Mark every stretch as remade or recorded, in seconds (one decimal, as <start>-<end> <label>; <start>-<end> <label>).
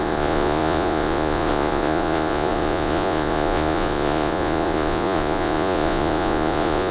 0.0-6.9 remade